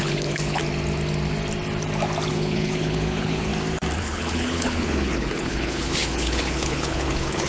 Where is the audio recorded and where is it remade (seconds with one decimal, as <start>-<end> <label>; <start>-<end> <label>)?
0.0-0.6 remade; 0.6-2.3 recorded; 2.3-3.5 remade; 3.5-4.0 recorded; 4.0-7.5 remade

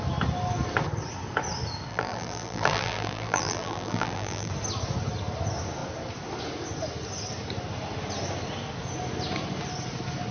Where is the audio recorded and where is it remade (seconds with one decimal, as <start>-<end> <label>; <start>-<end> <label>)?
0.0-1.9 recorded; 1.9-4.5 remade; 4.5-10.3 recorded